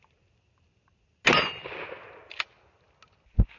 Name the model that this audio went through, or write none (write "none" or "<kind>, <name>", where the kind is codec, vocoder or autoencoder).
none